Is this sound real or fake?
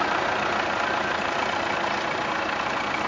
real